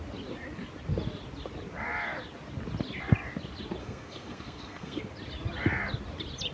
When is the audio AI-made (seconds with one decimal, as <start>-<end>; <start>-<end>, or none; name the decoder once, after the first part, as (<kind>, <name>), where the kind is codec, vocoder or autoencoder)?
3.8-5.0 (codec, SNAC)